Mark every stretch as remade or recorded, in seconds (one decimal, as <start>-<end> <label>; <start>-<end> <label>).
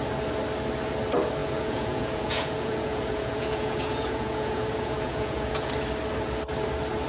0.0-1.4 recorded; 1.4-5.7 remade; 5.7-7.1 recorded